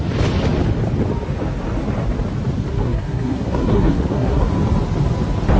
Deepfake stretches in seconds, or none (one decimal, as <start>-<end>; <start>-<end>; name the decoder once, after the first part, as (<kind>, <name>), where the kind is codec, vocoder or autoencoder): 2.7-4.5 (codec, SNAC)